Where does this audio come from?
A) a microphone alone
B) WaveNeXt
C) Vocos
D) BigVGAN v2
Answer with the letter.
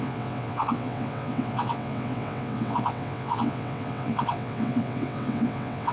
B